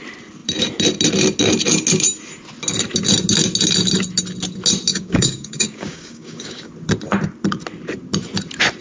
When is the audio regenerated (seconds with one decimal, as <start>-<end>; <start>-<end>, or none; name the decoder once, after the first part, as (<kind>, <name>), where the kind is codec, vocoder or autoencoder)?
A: 4.9-6.7 (codec, DAC)